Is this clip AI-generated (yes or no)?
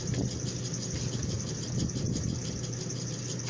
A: no